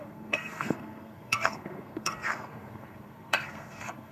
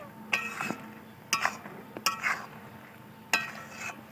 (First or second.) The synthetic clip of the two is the first